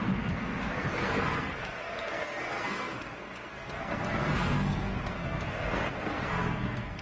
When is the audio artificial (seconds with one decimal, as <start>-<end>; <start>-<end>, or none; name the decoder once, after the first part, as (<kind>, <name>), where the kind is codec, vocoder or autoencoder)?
0.0-7.0 (codec, SNAC)